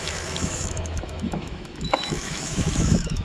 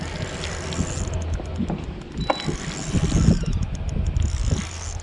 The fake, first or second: first